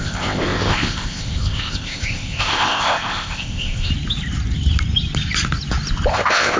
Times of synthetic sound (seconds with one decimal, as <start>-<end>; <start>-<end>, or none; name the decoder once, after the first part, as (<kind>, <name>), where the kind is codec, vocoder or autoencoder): 0.0-3.9 (codec, ZipCodec); 6.1-6.6